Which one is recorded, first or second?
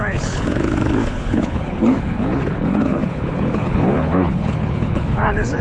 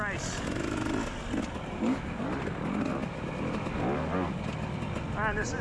second